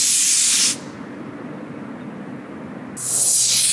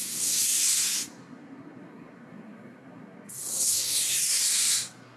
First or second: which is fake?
second